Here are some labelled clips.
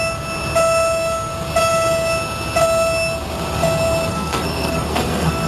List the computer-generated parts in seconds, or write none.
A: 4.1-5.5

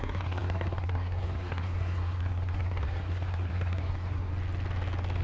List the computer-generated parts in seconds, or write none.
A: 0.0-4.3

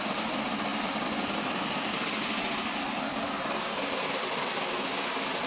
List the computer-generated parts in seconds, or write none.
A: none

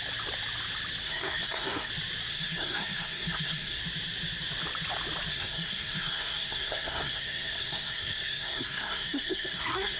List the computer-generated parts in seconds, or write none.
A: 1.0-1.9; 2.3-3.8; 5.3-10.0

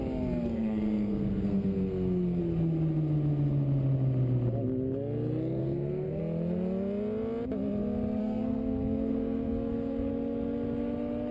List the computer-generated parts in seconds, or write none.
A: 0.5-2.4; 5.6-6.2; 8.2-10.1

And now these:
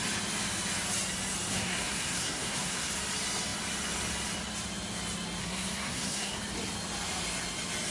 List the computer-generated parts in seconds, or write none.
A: 1.5-2.9; 5.4-6.4